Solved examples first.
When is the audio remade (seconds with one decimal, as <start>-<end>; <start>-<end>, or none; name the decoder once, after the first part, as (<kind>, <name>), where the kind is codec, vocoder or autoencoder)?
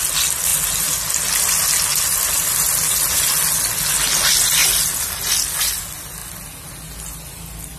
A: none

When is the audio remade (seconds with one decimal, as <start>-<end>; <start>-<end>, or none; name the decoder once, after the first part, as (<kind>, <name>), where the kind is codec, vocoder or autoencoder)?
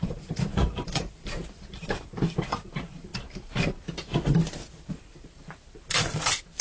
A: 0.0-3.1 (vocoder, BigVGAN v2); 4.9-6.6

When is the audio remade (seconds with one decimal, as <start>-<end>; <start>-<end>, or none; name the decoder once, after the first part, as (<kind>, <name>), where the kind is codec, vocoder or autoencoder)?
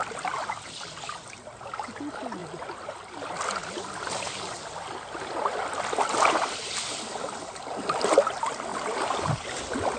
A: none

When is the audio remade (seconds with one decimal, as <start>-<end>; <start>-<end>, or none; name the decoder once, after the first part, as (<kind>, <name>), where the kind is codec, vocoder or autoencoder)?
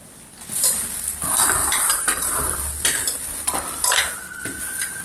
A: 1.6-2.6 (vocoder, BigVGAN v2)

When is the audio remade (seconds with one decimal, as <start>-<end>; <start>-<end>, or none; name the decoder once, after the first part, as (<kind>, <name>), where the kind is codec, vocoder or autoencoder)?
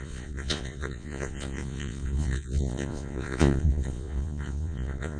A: 0.0-5.2 (vocoder, Vocos)